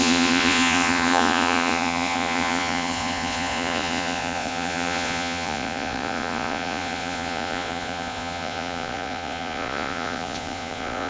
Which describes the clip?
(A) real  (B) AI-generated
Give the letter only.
B